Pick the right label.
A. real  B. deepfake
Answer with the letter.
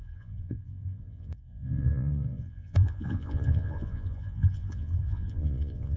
B